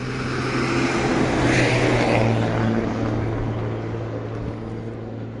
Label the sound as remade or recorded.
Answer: recorded